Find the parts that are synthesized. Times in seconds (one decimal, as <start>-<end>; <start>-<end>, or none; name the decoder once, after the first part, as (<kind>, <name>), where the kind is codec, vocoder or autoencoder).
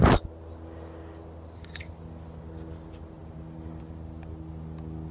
none